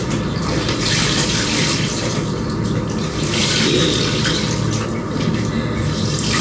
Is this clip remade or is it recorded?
remade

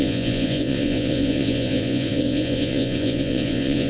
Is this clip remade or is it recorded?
remade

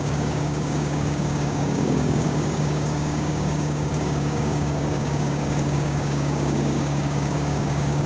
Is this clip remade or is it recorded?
remade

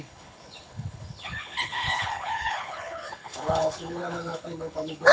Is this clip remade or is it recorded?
remade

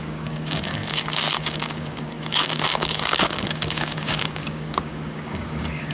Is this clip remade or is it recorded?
remade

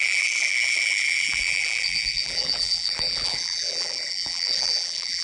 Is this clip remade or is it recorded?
remade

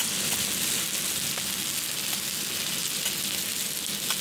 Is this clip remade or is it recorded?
recorded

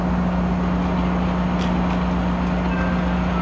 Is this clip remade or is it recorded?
recorded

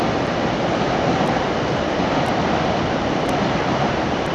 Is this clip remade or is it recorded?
recorded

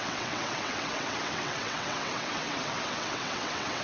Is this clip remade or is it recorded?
remade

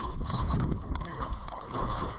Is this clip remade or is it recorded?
remade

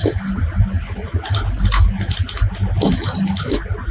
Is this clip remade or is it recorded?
recorded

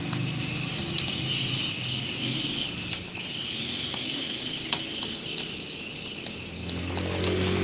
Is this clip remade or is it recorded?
recorded